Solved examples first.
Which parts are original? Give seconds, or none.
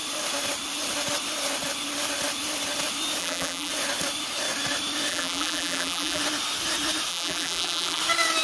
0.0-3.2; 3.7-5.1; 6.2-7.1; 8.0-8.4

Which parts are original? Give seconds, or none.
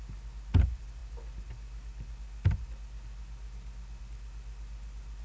0.0-5.2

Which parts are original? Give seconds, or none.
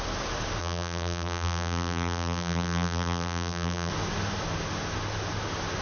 0.0-0.6; 3.9-5.8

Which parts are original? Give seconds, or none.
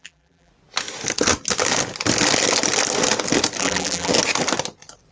0.5-3.6; 4.1-5.1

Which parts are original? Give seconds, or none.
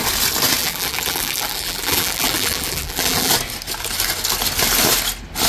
0.0-0.6; 3.3-5.5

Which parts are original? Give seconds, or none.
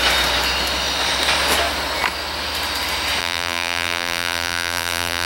0.0-3.2